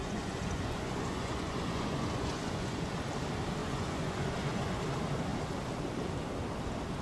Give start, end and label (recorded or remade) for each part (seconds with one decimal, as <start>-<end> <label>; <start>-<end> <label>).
0.0-2.9 remade; 2.9-3.6 recorded; 3.6-4.8 remade; 4.8-7.0 recorded